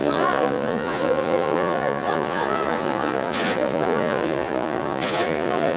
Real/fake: fake